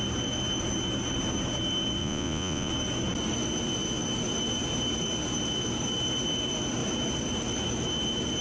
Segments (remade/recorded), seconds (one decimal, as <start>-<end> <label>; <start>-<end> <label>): 0.0-2.0 recorded; 2.0-2.7 remade; 2.7-8.4 recorded